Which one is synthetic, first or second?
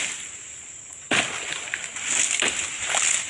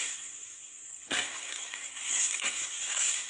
second